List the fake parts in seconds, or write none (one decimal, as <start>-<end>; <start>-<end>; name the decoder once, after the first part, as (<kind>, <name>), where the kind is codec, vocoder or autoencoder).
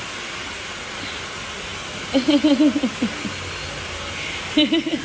none